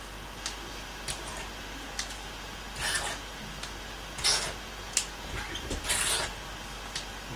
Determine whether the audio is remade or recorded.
recorded